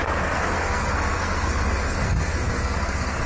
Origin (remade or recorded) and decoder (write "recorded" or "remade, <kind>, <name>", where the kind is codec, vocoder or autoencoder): remade, codec, SNAC